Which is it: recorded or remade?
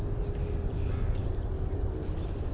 recorded